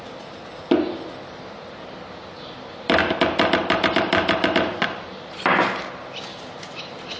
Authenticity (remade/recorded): recorded